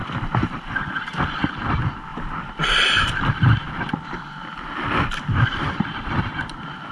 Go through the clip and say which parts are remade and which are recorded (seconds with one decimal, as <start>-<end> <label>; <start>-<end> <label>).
0.0-1.0 remade; 1.0-2.1 recorded; 2.1-6.2 remade; 6.2-6.9 recorded